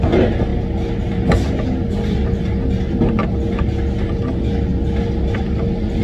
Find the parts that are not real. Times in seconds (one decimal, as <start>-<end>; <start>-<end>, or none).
none